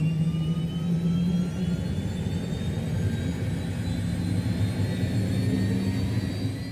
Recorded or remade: recorded